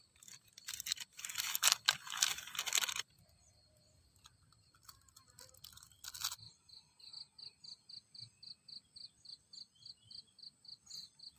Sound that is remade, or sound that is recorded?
recorded